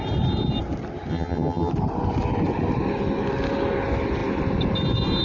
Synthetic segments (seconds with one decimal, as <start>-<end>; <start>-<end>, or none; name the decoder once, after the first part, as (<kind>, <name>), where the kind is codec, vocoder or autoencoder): 1.1-1.7 (vocoder, HiFi-GAN)